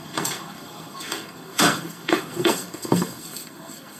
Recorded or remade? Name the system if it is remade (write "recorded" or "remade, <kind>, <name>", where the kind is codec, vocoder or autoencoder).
remade, codec, SNAC